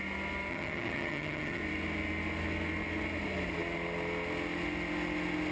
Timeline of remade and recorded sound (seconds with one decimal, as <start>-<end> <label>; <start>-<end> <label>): 0.0-0.5 recorded; 0.5-1.6 remade; 1.6-5.5 recorded